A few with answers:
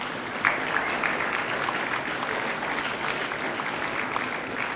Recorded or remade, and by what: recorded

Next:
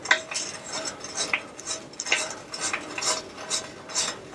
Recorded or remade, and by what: recorded